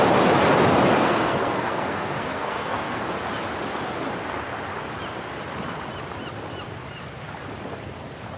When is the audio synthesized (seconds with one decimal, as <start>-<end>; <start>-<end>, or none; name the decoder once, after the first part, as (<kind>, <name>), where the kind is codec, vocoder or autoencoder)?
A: 1.0-3.0 (codec, SNAC)